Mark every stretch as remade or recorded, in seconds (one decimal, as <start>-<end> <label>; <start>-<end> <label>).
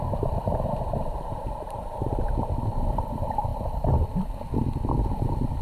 0.0-3.5 remade; 3.5-5.1 recorded; 5.1-5.6 remade